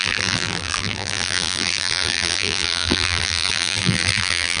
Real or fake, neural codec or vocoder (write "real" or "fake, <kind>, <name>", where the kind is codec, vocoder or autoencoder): fake, vocoder, BigVGAN v2